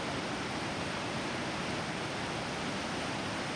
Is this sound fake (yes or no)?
no